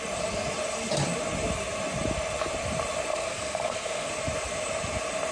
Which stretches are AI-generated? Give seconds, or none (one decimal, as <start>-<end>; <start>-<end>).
3.1-4.1

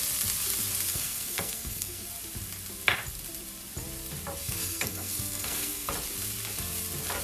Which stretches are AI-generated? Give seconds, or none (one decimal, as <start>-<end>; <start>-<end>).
0.9-2.1; 4.4-5.9

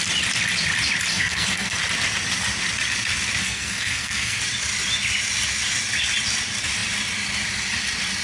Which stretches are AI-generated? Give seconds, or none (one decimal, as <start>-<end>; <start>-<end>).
1.1-1.8; 3.4-4.4

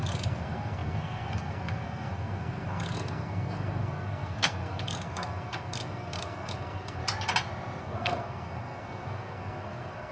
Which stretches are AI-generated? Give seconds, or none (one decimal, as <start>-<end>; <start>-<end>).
0.0-7.0; 7.8-10.1

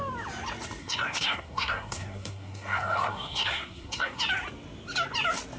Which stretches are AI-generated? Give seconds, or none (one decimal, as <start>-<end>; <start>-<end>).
0.8-4.2

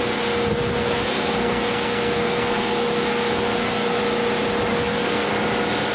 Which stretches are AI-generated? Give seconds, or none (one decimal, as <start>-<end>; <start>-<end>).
0.5-4.0; 4.7-5.3

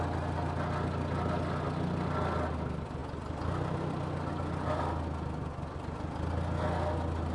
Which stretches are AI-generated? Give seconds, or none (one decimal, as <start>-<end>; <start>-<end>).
none